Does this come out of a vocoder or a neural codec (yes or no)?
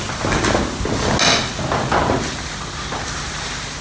no